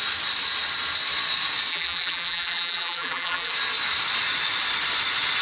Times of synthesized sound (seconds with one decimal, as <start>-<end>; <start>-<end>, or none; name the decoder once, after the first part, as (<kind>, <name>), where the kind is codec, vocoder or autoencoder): 1.7-3.5 (vocoder, BigVGAN v2)